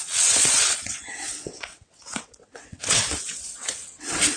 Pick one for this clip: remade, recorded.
remade